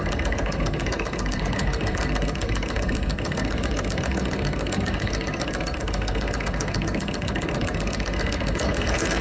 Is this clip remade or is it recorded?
remade